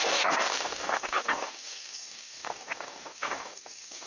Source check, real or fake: fake